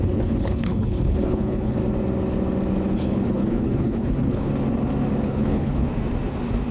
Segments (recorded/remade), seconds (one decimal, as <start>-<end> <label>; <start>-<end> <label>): 0.0-1.8 remade; 1.8-3.0 recorded; 3.0-4.5 remade; 4.5-5.3 recorded; 5.3-5.9 remade; 5.9-6.7 recorded

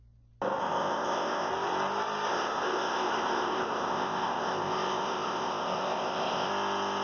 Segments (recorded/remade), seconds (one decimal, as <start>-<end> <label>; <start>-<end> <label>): 0.0-0.6 recorded; 0.6-1.5 remade; 1.5-2.3 recorded; 2.3-6.5 remade; 6.5-7.0 recorded

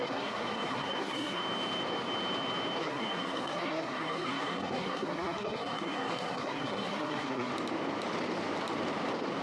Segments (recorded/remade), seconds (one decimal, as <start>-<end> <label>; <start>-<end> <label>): 0.0-1.4 remade; 1.4-2.8 recorded; 2.8-7.5 remade; 7.5-9.4 recorded

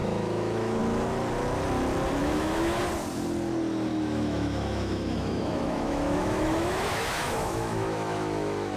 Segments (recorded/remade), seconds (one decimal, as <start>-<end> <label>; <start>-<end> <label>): 0.0-0.8 remade; 0.8-2.2 recorded; 2.2-2.8 remade; 2.8-3.9 recorded; 3.9-8.8 remade

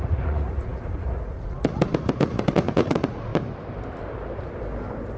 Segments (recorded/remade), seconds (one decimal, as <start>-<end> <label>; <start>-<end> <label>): 0.0-3.3 remade; 3.3-5.2 recorded

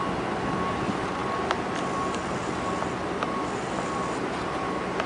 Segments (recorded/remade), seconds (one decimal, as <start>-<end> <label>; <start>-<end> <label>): 0.0-5.1 recorded

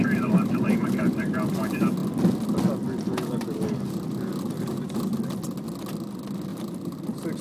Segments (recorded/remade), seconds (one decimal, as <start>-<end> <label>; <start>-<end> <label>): 0.0-6.5 recorded; 6.5-7.0 remade; 7.0-7.4 recorded